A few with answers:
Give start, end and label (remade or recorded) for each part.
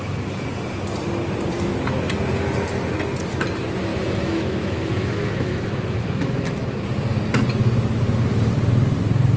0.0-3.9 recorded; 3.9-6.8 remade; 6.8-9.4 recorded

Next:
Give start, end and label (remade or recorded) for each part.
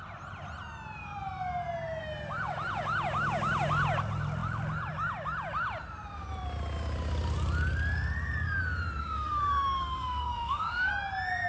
0.0-9.0 recorded; 9.0-10.9 remade; 10.9-11.5 recorded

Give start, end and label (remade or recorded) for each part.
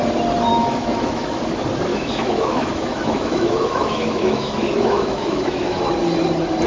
0.0-0.5 recorded; 0.5-1.4 remade; 1.4-1.9 recorded; 1.9-5.9 remade; 5.9-6.7 recorded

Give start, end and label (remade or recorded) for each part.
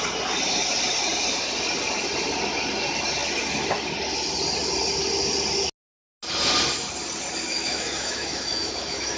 0.0-7.5 recorded; 7.5-9.2 remade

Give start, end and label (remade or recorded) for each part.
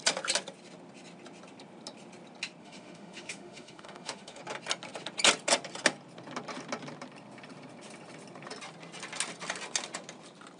0.0-2.6 recorded; 2.6-4.4 remade; 4.4-10.6 recorded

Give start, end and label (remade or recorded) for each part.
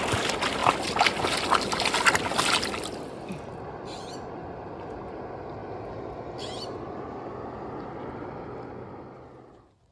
0.0-9.9 recorded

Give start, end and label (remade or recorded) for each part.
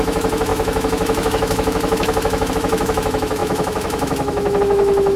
0.0-5.2 remade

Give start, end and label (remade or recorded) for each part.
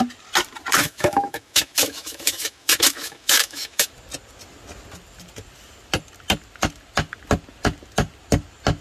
0.0-0.8 recorded; 0.8-3.9 remade; 3.9-8.8 recorded